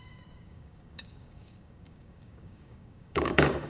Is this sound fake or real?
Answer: fake